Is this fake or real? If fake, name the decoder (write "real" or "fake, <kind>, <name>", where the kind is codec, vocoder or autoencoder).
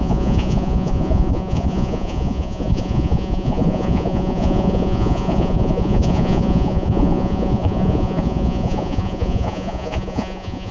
fake, vocoder, Vocos